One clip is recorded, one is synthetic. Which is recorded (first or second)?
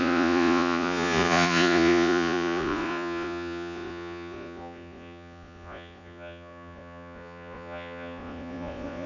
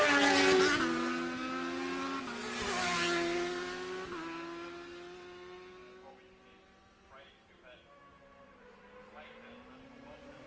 second